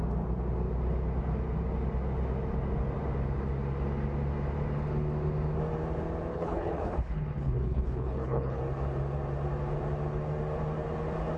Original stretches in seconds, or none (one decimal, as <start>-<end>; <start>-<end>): 0.0-6.3; 8.6-11.4